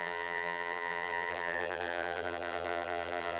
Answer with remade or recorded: remade